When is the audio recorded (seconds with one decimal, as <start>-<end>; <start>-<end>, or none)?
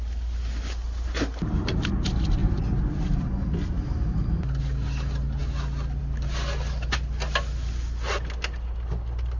0.0-9.4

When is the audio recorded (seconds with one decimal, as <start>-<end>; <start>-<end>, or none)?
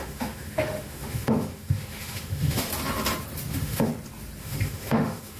2.7-3.5; 3.9-4.4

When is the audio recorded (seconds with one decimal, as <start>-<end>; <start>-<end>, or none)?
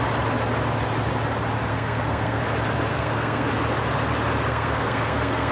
0.0-1.7; 2.4-2.9; 3.5-4.5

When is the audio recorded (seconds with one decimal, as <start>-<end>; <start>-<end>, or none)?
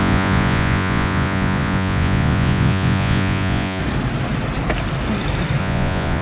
3.8-5.6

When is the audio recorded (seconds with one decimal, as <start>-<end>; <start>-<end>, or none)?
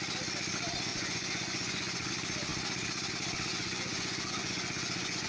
0.0-0.9; 2.1-3.5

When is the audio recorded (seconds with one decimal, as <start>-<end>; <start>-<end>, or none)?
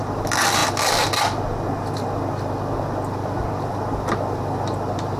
0.0-5.2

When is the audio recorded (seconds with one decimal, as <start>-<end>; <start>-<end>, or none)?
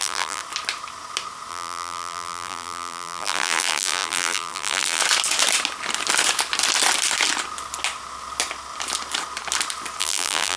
0.4-1.5; 5.0-10.0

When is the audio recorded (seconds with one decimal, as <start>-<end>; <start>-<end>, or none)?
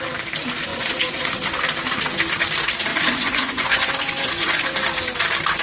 0.0-0.7; 1.3-2.9; 4.6-5.6